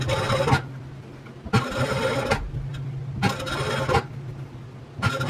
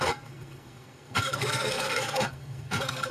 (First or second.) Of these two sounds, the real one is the first